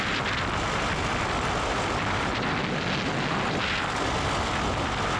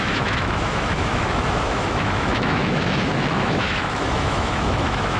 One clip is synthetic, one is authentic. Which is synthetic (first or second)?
second